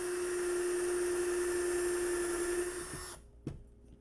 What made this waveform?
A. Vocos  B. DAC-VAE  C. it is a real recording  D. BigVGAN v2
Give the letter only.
C